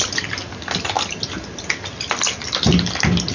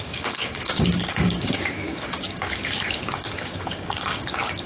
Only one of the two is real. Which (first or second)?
first